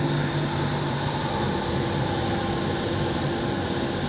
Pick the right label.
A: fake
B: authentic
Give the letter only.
B